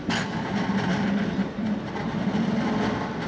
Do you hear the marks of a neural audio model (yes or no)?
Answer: no